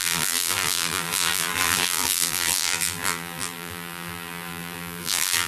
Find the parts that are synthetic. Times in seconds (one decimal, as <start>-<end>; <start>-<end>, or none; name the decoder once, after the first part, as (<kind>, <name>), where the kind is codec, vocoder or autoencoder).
0.0-5.5 (vocoder, BigVGAN v2)